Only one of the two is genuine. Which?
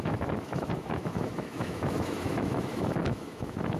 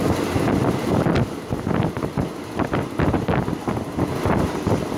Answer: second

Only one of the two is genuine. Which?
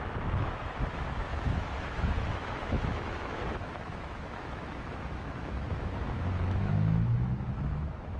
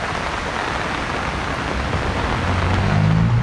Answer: second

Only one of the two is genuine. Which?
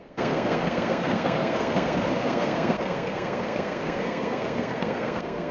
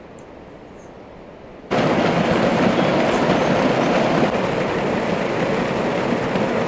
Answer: second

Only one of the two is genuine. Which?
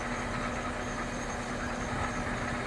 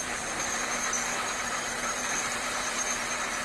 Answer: first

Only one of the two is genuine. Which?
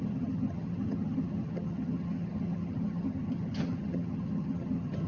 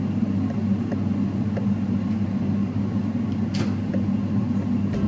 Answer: second